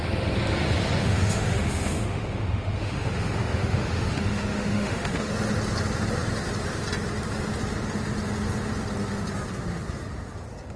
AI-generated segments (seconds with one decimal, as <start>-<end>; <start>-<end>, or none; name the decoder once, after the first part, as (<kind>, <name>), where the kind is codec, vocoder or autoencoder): 1.0-5.3 (autoencoder, DAC-VAE)